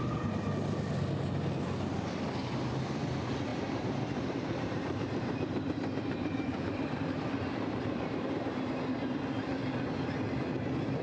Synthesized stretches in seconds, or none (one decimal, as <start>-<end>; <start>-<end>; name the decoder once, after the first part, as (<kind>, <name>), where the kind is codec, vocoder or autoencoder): 3.5-8.7 (vocoder, BigVGAN v2)